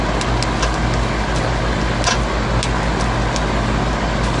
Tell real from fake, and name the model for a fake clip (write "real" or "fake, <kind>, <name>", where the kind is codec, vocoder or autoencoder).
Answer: real